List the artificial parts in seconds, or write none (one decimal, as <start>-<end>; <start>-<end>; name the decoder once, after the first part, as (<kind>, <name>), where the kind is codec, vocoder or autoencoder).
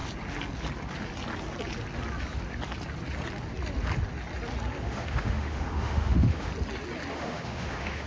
4.8-6.5 (autoencoder, DAC-VAE); 7.1-8.1